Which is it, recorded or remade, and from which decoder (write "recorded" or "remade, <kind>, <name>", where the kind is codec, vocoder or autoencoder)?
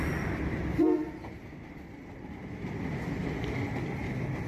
remade, vocoder, BigVGAN v2